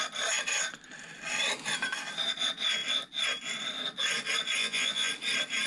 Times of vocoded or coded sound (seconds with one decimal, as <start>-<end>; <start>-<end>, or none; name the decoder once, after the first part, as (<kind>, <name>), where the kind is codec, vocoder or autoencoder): 4.6-5.1 (vocoder, Vocos)